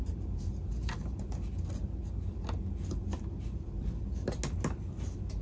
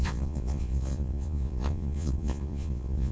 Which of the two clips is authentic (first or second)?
first